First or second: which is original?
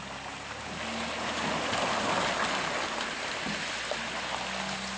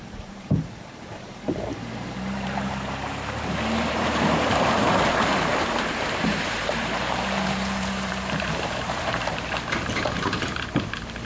first